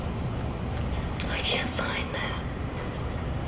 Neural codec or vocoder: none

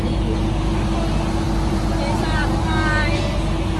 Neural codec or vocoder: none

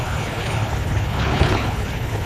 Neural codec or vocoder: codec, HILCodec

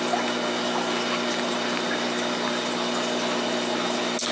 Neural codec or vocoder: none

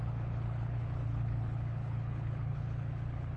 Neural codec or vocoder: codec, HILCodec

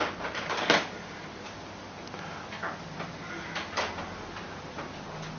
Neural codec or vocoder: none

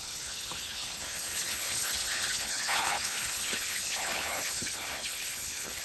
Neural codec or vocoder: codec, HILCodec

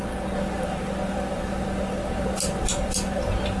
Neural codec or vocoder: none